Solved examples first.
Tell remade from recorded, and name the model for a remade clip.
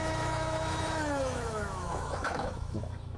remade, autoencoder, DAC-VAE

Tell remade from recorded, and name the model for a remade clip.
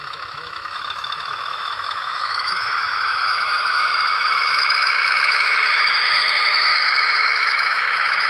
remade, autoencoder, DAC-VAE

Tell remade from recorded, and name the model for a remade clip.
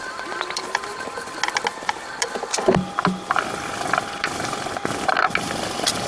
recorded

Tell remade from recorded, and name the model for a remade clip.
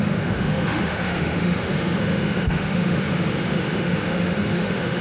remade, autoencoder, DAC-VAE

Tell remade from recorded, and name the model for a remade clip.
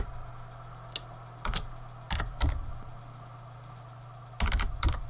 recorded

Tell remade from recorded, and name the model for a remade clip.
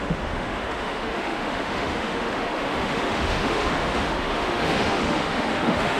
remade, autoencoder, DAC-VAE